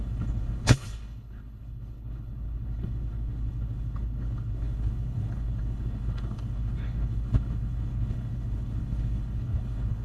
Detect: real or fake fake